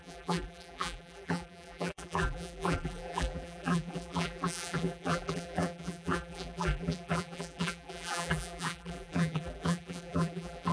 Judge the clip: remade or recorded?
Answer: remade